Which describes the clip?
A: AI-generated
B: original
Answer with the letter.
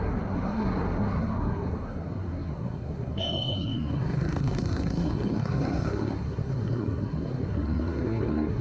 A